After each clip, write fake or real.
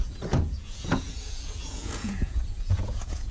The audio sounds fake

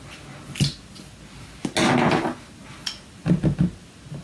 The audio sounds real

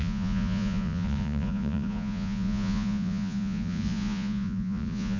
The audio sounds fake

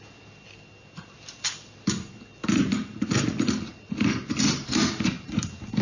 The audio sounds real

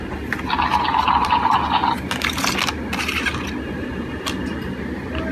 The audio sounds real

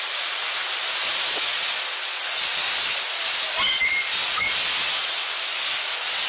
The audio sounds real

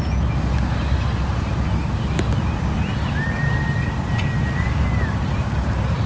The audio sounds real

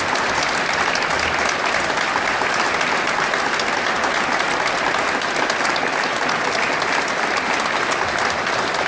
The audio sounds real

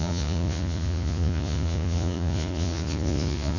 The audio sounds fake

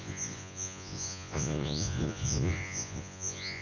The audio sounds fake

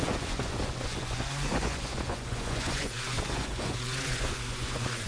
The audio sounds fake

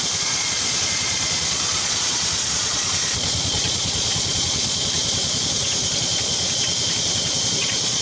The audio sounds fake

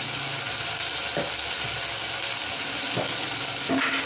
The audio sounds real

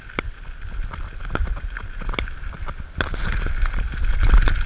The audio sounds real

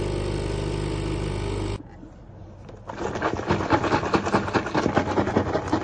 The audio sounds real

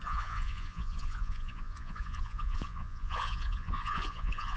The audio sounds fake